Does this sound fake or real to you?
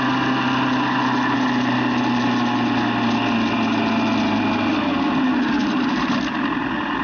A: real